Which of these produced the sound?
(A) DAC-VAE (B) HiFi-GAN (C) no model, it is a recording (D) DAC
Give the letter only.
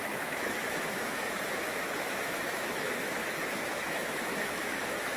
A